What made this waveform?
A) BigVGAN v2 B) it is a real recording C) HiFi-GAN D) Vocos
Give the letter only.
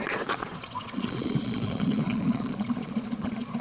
D